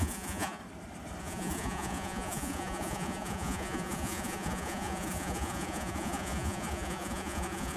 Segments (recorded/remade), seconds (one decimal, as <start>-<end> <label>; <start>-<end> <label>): 0.0-0.6 remade; 0.6-1.2 recorded; 1.2-7.8 remade